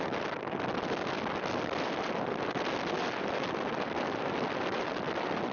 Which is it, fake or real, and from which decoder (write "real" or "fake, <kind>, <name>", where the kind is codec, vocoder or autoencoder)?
real